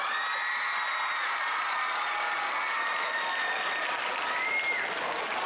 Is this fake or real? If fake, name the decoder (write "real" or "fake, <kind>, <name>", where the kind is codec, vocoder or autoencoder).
real